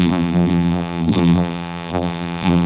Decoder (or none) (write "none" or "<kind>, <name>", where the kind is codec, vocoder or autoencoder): vocoder, BigVGAN v2